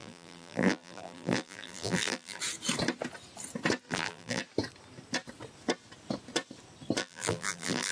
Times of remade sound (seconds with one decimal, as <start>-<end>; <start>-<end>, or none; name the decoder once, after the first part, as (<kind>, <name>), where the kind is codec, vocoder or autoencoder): 0.0-2.4 (vocoder, BigVGAN v2); 3.9-4.4; 7.0-7.9